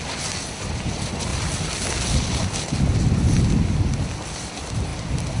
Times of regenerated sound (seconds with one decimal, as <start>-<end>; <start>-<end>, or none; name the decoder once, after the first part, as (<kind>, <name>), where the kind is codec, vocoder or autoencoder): 1.3-4.5 (vocoder, BigVGAN v2); 4.9-5.4